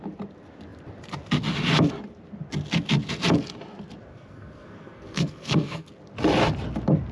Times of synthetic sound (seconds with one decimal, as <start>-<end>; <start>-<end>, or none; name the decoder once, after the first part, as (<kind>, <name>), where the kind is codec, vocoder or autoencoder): 4.1-5.9 (codec, SNAC)

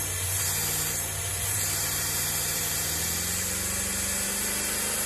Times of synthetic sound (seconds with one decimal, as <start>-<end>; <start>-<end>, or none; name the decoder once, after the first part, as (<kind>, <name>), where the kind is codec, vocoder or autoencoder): 1.3-2.8 (vocoder, BigVGAN v2)

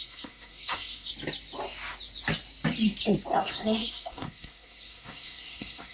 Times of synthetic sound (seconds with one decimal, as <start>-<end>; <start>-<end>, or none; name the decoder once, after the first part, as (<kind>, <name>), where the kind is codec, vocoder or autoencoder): 0.0-1.1 (codec, SNAC); 3.4-5.9

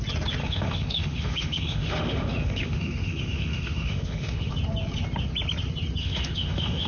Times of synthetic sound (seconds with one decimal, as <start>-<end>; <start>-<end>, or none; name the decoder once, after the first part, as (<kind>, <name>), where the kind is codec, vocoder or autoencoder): 0.4-4.5 (autoencoder, DAC-VAE); 6.0-6.9